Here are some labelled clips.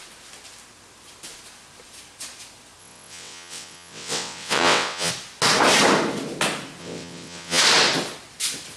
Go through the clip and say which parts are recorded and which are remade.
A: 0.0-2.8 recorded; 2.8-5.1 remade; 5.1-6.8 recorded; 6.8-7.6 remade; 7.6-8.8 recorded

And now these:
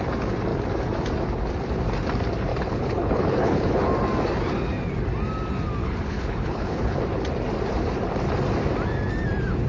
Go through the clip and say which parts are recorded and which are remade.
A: 0.0-2.5 recorded; 2.5-3.8 remade; 3.8-5.8 recorded; 5.8-7.0 remade; 7.0-9.7 recorded

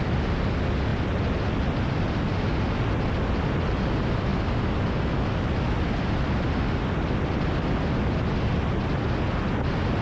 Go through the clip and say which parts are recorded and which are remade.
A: 0.0-10.0 recorded

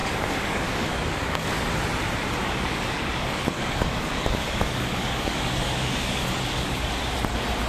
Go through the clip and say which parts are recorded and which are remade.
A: 0.0-1.7 remade; 1.7-2.4 recorded; 2.4-6.9 remade; 6.9-7.7 recorded

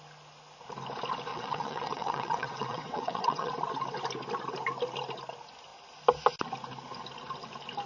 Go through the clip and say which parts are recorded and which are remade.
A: 0.0-1.3 recorded; 1.3-3.5 remade; 3.5-7.9 recorded